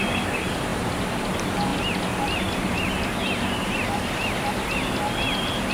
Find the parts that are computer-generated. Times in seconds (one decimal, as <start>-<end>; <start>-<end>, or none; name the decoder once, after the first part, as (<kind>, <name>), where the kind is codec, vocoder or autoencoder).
none